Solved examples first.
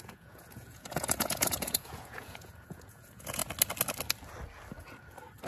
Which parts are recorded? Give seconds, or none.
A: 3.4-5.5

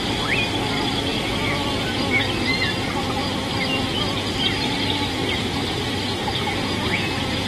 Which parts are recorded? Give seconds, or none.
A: 0.0-6.2